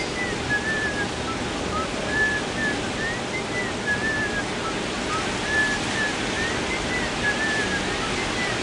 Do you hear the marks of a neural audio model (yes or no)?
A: no